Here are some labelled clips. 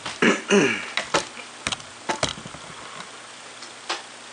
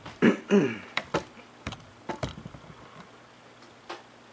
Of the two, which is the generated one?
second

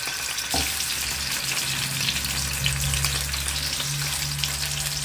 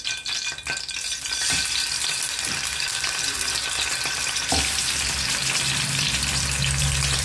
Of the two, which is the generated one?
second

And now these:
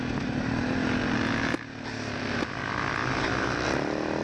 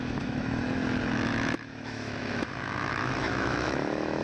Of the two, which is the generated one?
second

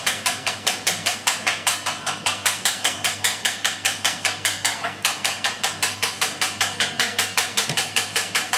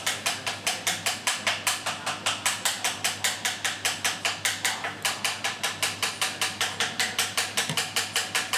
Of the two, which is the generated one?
first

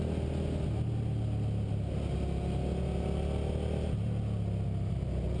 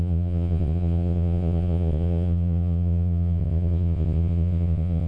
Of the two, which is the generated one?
second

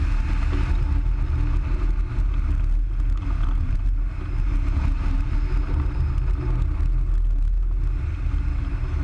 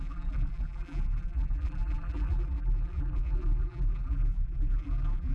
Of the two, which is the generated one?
second